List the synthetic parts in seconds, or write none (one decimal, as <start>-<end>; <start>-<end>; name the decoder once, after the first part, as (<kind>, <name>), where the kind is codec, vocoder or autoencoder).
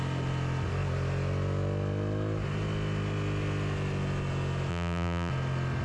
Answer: 4.7-5.3 (vocoder, BigVGAN v2)